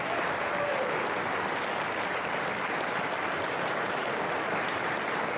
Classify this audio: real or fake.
real